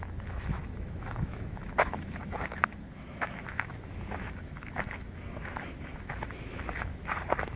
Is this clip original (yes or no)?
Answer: no